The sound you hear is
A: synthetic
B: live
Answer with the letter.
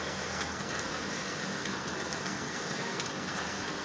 A